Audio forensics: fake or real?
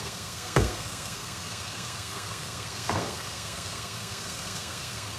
fake